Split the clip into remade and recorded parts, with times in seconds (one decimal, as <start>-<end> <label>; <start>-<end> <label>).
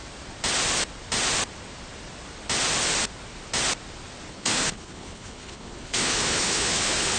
0.0-4.3 recorded; 4.3-7.2 remade